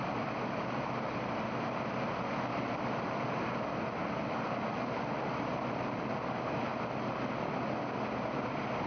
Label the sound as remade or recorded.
recorded